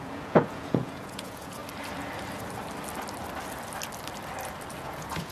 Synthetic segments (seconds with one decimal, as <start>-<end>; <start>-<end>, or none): 0.0-1.6; 4.8-5.3